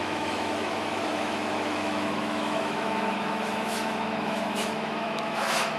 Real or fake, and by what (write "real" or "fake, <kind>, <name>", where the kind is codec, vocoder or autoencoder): fake, autoencoder, DAC-VAE